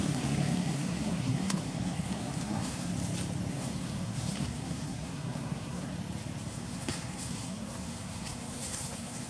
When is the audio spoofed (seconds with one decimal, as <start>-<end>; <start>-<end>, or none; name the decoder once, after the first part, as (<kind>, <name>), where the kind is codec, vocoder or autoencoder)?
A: 0.0-2.9 (codec, SNAC); 3.5-5.9; 6.5-9.3